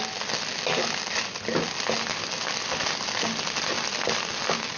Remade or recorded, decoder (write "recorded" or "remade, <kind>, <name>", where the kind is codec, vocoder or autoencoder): recorded